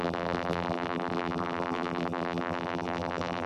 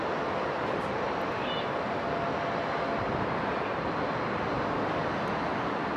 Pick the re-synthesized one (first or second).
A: first